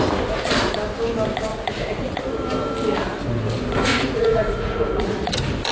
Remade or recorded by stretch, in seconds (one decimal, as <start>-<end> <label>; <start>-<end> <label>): 0.0-1.5 recorded; 1.5-2.2 remade; 2.2-3.9 recorded; 3.9-5.3 remade; 5.3-5.7 recorded